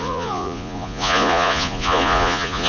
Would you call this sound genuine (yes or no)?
no